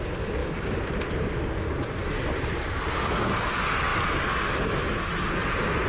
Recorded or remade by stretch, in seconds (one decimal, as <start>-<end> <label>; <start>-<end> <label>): 0.0-0.4 recorded; 0.4-0.9 remade; 0.9-2.0 recorded; 2.0-2.9 remade; 2.9-5.9 recorded